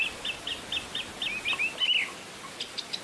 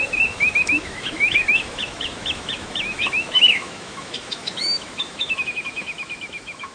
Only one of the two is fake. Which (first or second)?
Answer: second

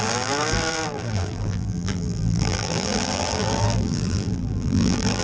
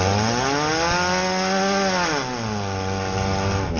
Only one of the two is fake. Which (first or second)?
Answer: first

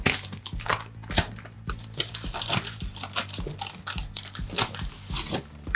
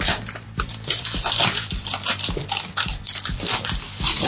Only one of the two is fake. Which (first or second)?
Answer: second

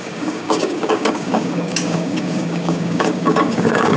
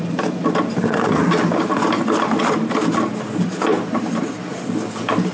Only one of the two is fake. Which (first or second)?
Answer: first